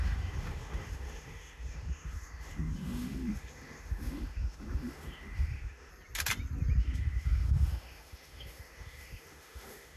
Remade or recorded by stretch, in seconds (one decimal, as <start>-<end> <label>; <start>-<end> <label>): 0.0-5.9 remade; 5.9-6.8 recorded; 6.8-10.0 remade